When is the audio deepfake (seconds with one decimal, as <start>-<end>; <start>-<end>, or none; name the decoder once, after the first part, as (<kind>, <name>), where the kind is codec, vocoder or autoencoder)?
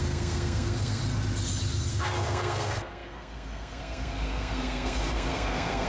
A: 0.0-1.0 (codec, SNAC); 1.9-5.9